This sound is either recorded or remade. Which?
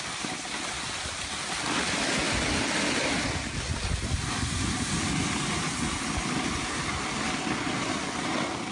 recorded